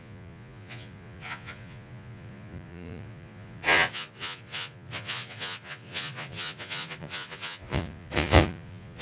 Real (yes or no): no